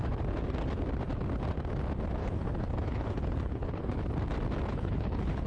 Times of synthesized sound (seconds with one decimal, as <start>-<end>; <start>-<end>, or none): 2.2-4.0; 4.7-5.5